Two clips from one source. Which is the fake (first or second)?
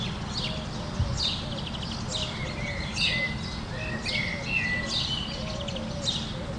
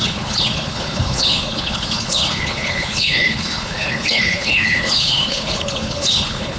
second